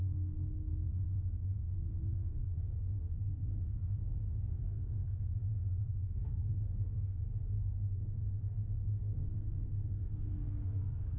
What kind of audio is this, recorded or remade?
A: remade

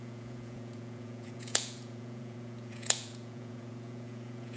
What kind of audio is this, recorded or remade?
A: remade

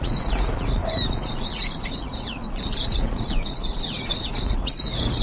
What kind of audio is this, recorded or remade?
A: remade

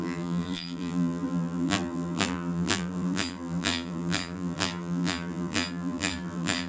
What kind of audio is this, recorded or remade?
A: remade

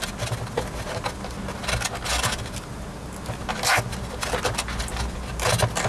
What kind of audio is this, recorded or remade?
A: recorded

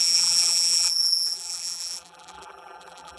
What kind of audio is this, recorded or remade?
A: remade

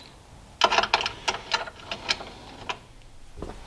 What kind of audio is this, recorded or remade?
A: recorded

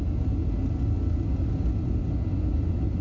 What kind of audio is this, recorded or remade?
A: recorded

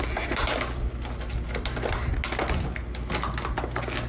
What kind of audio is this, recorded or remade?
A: recorded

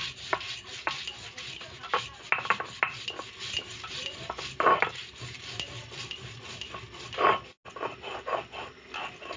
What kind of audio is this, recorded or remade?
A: recorded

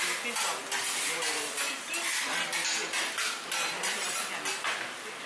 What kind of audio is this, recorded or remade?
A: recorded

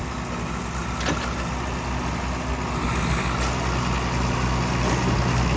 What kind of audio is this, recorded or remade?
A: recorded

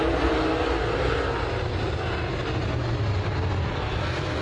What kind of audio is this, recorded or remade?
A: recorded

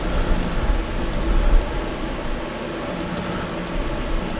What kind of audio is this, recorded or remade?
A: recorded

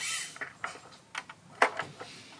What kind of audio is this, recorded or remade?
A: recorded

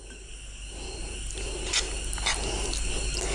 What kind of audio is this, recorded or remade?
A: recorded